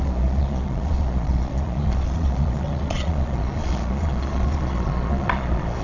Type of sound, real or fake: fake